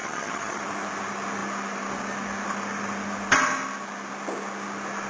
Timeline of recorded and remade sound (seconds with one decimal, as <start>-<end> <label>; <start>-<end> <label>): 0.0-0.6 remade; 0.6-5.1 recorded